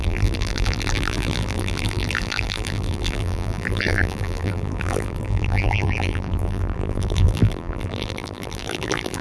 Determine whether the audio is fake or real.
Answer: fake